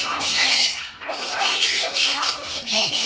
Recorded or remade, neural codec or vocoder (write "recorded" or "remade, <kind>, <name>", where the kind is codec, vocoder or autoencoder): remade, codec, SNAC